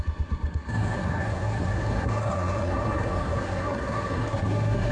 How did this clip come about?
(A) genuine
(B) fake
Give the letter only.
B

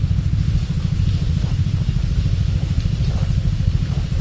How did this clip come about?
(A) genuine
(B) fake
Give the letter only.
A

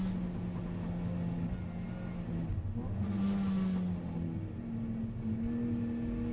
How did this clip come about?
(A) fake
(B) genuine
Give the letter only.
B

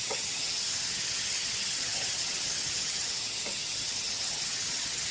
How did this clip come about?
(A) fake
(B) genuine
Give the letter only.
A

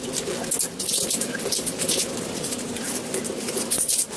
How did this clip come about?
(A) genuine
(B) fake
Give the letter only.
A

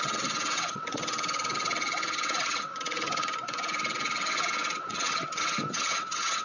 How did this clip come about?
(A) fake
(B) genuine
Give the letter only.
A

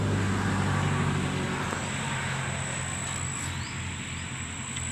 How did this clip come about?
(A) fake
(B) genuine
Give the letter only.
B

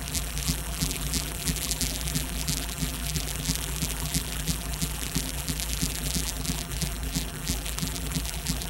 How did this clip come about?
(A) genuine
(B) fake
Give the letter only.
B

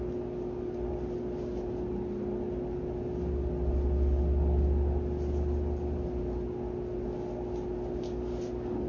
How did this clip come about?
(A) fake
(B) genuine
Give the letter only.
B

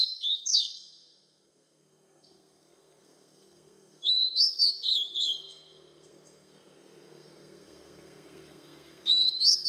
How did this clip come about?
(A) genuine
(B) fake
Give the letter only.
B